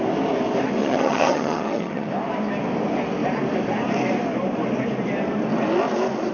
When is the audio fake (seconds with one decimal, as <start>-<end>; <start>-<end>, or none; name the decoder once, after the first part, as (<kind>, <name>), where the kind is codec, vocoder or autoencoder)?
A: 0.8-2.1 (vocoder, HiFi-GAN)